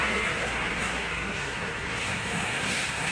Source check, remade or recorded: remade